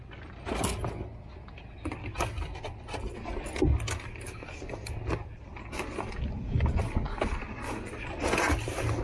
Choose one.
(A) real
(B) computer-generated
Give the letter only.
A